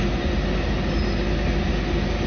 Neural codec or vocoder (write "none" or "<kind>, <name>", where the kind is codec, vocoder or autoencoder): none